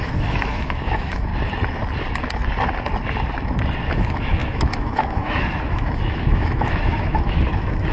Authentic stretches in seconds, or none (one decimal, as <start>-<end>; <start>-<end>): 1.3-3.9